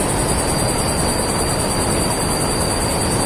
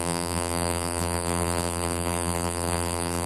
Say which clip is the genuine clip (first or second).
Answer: first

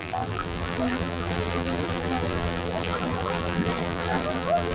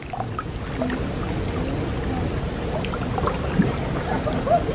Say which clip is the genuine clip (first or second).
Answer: second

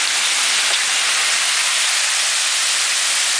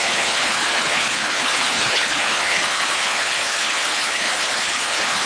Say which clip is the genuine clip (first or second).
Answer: first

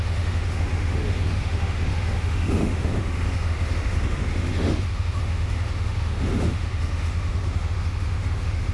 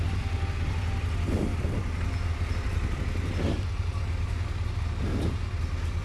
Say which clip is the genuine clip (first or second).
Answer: second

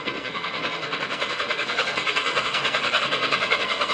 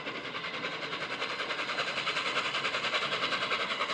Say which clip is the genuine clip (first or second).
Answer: second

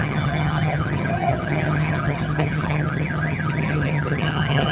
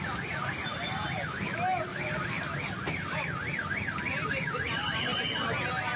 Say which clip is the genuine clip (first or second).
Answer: second